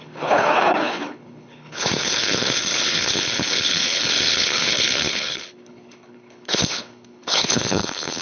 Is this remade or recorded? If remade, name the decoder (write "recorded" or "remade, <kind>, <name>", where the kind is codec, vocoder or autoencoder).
remade, codec, HILCodec